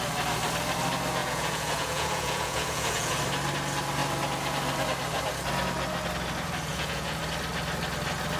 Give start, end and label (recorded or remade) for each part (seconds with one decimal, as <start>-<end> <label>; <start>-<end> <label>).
0.0-1.2 recorded; 1.2-3.2 remade; 3.2-6.7 recorded; 6.7-7.2 remade; 7.2-8.4 recorded